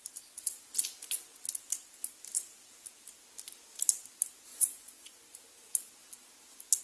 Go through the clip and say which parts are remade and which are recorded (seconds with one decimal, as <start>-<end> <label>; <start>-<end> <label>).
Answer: 0.0-4.5 recorded; 4.5-5.2 remade; 5.2-6.8 recorded